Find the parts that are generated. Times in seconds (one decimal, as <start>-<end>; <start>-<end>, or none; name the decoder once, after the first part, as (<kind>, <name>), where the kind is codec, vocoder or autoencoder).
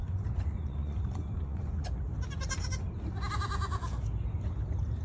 0.0-1.9 (vocoder, Vocos)